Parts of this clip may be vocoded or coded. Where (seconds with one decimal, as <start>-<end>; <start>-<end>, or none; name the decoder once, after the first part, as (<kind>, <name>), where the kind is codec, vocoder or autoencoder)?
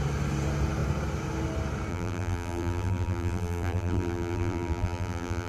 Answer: 1.9-5.5 (vocoder, BigVGAN v2)